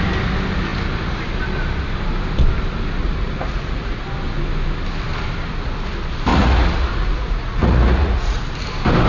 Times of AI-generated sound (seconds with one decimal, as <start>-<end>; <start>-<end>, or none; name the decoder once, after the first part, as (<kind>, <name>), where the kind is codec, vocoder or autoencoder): 3.0-4.0 (vocoder, Vocos); 6.3-8.4